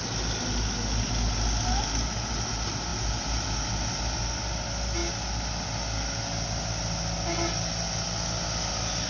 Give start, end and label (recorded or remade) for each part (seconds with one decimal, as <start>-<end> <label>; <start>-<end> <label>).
0.0-9.1 recorded